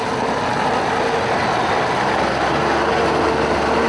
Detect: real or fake real